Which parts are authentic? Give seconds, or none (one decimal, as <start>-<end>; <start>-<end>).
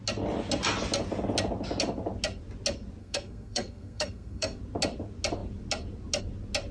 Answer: 0.0-3.0; 4.6-6.7